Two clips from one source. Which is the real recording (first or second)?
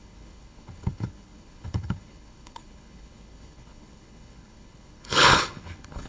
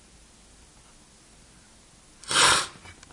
second